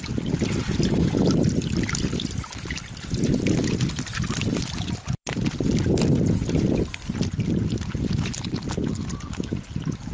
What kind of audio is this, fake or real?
real